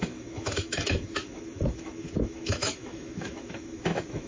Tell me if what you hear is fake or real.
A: fake